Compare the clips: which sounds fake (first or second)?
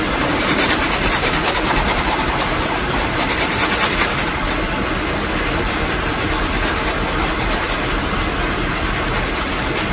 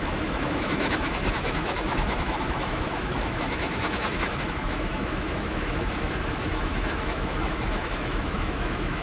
second